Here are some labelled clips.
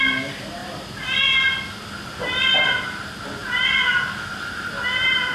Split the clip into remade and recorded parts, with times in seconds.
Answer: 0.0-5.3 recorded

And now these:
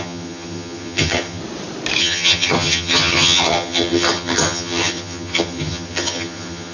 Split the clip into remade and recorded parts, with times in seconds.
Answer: 0.0-1.4 remade; 1.4-2.0 recorded; 2.0-6.7 remade

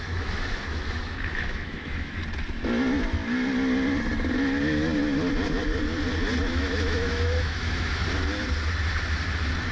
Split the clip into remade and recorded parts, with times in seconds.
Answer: 0.0-2.2 remade; 2.2-6.4 recorded; 6.4-8.0 remade; 8.0-9.7 recorded

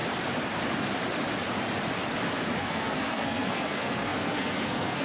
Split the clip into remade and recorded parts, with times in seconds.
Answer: 0.0-2.6 recorded; 2.6-5.0 remade